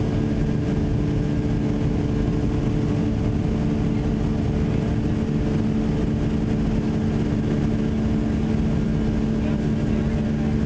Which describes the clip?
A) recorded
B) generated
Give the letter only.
A